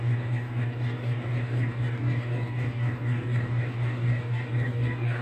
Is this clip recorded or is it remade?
remade